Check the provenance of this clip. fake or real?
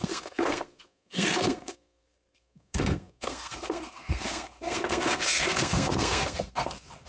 fake